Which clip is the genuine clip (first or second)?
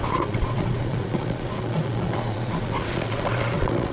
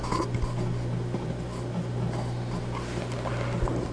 second